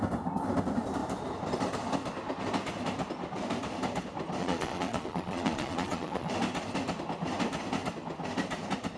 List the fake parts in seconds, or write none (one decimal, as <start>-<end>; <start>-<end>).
4.4-6.3